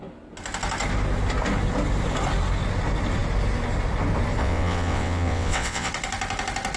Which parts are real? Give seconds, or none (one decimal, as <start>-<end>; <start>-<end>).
0.0-4.4; 5.9-6.8